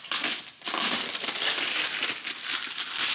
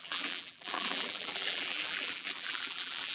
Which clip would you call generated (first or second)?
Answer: second